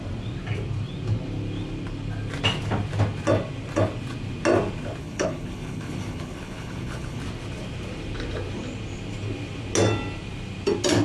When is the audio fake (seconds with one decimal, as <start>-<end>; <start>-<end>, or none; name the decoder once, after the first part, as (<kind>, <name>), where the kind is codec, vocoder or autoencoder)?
5.0-7.2 (codec, HILCodec)